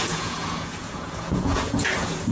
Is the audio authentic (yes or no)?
no